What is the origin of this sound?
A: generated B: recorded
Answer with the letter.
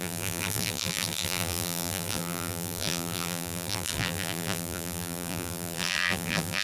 A